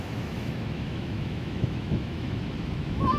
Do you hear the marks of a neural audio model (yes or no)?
yes